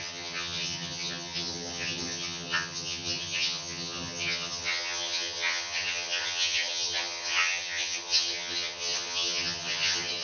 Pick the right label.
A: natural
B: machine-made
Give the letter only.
B